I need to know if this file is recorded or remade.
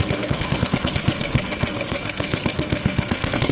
remade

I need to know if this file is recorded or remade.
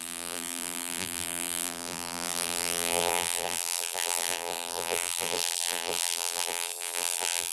remade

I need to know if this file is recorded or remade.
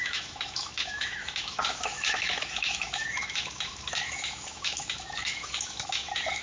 remade